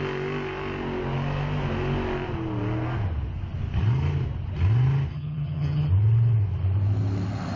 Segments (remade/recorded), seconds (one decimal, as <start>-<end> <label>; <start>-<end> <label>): 0.0-5.1 recorded; 5.1-5.9 remade; 5.9-7.6 recorded